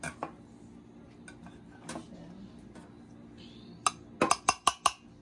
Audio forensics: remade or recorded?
recorded